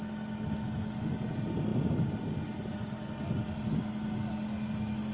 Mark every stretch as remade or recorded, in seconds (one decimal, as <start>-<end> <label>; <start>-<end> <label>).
0.0-5.1 recorded